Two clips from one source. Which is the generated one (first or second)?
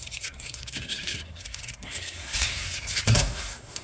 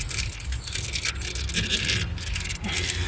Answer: first